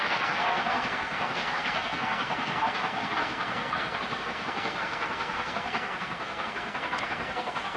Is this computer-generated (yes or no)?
yes